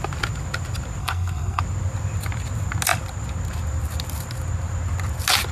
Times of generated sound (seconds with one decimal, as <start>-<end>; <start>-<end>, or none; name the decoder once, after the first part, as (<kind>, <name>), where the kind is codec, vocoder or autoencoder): 1.0-1.6 (codec, SNAC)